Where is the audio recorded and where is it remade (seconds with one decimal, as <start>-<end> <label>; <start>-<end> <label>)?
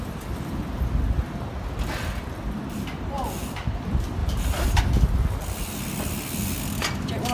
0.0-4.2 recorded; 4.2-4.8 remade; 4.8-7.3 recorded